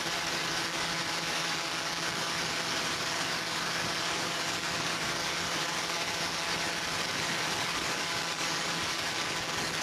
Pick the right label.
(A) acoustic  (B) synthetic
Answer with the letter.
B